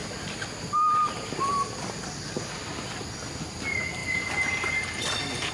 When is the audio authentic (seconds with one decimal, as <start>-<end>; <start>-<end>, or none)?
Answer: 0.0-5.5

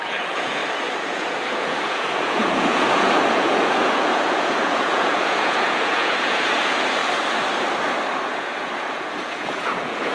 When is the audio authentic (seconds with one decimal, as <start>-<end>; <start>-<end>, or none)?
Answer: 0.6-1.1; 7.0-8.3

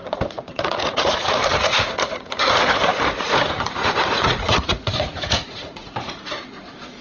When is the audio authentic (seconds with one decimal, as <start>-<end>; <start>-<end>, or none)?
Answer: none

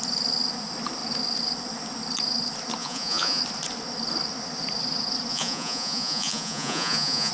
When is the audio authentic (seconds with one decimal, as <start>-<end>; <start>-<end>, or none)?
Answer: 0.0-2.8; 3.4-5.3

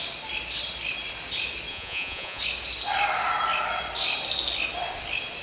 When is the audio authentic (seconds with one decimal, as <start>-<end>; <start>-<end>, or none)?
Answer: 0.0-1.7; 2.4-5.4

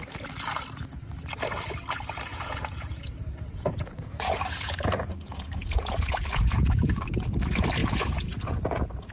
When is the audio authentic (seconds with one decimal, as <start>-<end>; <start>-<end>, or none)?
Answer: 0.0-2.3; 7.0-7.8